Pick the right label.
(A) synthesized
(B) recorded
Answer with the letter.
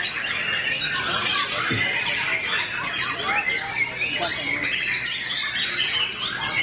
B